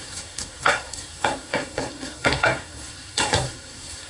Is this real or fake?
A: fake